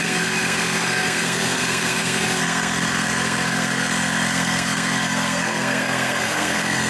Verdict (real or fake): fake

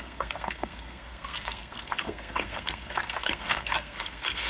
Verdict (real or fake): fake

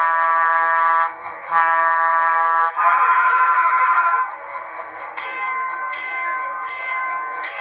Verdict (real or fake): fake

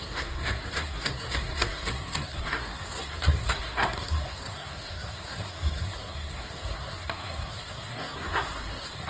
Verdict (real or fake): fake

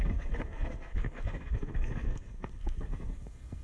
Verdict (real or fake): fake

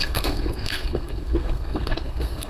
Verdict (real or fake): fake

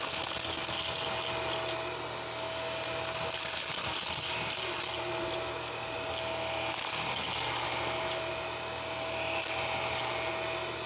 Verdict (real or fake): real